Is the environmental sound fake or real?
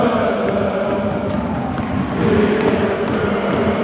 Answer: real